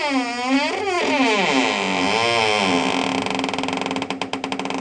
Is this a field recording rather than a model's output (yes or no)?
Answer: yes